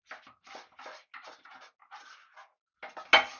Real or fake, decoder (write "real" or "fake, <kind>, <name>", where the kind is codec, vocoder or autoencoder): real